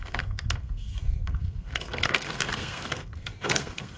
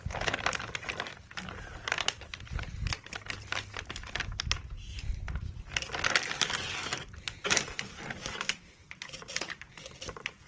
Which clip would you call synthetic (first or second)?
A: first